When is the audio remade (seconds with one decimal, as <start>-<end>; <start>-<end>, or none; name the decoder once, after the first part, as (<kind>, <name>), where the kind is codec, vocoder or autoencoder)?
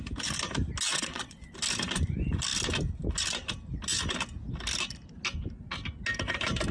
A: 0.9-1.5 (vocoder, WaveNeXt)